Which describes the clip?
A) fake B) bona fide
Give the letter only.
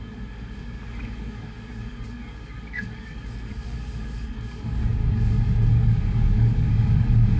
A